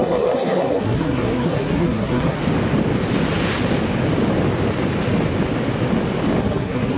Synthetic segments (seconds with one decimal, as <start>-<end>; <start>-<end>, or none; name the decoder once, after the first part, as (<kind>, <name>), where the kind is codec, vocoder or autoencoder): 0.0-2.4 (codec, SNAC); 6.4-7.0